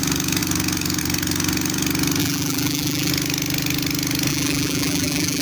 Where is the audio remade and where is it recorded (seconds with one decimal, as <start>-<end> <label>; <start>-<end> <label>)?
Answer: 0.0-2.2 recorded; 2.2-3.1 remade; 3.1-4.3 recorded; 4.3-5.4 remade